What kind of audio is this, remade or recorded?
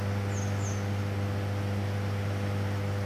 recorded